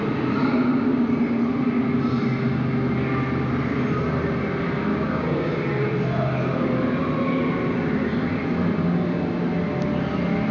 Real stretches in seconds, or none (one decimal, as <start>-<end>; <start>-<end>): 0.0-4.9; 5.5-10.5